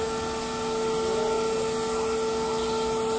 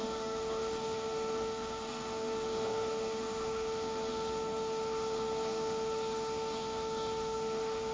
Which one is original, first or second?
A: first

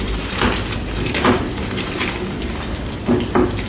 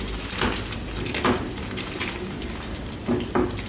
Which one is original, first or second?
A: second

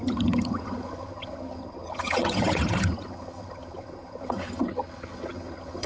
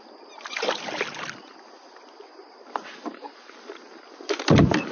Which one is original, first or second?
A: second